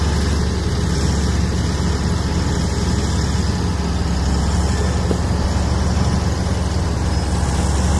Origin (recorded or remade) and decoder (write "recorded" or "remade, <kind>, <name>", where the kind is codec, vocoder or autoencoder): recorded